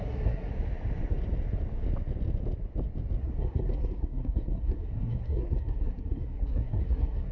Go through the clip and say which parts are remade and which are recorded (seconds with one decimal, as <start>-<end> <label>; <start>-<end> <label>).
0.0-0.5 remade; 0.5-3.2 recorded; 3.2-7.3 remade